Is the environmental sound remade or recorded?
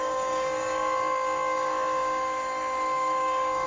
remade